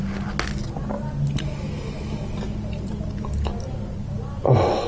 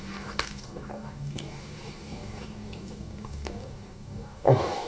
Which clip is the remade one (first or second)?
second